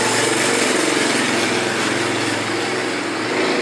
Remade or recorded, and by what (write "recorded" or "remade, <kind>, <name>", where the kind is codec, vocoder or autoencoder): recorded